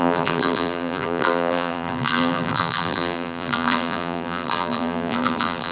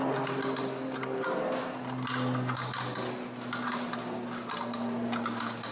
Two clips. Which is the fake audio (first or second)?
first